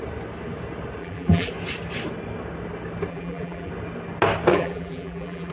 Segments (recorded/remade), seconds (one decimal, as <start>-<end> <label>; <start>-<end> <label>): 0.0-1.0 recorded; 1.0-1.5 remade; 1.5-3.1 recorded; 3.1-3.7 remade; 3.7-4.5 recorded; 4.5-5.5 remade